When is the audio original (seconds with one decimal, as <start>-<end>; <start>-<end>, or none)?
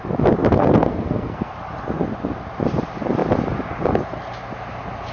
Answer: 0.0-0.4; 1.5-5.1